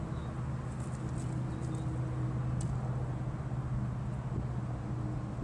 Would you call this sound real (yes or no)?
yes